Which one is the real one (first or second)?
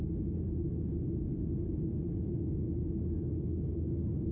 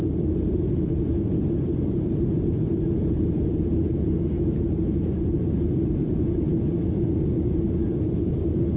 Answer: first